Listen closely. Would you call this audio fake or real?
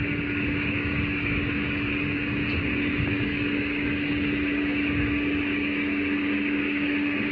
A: fake